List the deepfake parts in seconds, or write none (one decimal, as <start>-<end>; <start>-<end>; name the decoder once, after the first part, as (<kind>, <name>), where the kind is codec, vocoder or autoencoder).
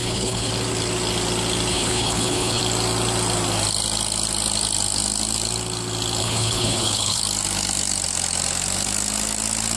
0.0-0.5 (codec, HILCodec); 1.7-2.6; 6.2-7.2